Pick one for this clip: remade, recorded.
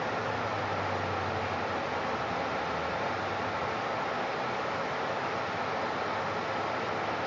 recorded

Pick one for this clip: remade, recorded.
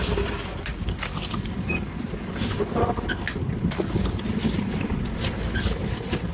remade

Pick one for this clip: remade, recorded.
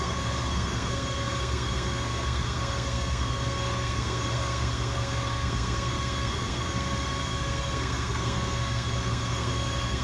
remade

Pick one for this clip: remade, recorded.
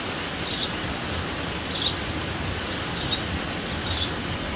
recorded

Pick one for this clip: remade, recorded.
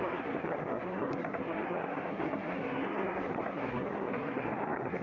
remade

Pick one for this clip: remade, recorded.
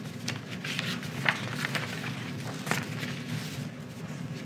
recorded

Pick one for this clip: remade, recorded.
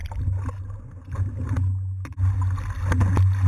recorded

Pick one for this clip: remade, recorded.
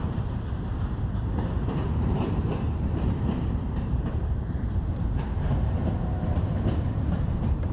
remade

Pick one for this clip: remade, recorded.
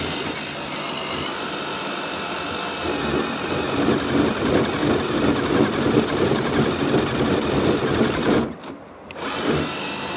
recorded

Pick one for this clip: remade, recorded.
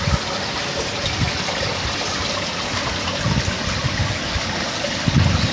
recorded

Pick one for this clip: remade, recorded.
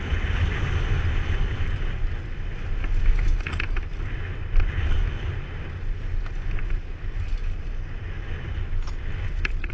recorded